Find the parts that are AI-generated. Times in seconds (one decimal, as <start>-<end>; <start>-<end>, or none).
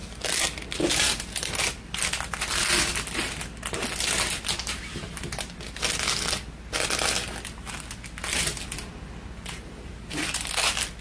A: none